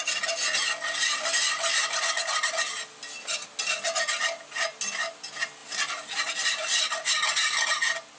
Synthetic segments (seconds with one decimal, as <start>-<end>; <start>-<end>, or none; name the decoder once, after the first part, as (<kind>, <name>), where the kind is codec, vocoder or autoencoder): none